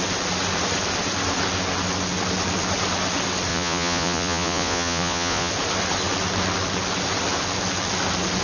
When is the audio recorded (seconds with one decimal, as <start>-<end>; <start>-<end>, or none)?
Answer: 0.0-3.5; 5.5-8.4